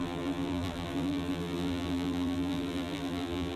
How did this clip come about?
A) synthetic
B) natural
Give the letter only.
A